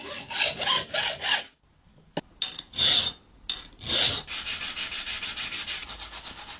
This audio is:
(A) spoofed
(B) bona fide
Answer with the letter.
B